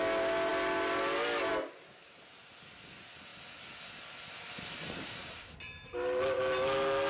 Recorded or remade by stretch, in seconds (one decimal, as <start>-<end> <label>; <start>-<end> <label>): 0.0-7.1 recorded